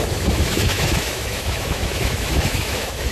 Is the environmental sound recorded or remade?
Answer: remade